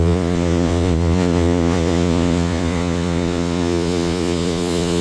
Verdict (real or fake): fake